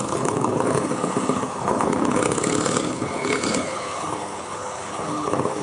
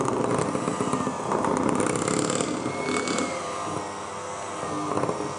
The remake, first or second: first